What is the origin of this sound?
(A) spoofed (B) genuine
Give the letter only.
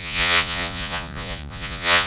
A